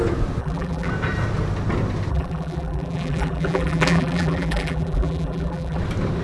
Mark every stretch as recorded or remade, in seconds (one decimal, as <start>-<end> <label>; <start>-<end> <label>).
0.0-0.4 recorded; 0.4-0.9 remade; 0.9-2.1 recorded; 2.1-5.8 remade; 5.8-6.2 recorded